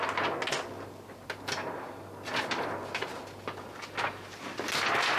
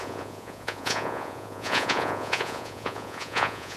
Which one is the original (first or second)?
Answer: first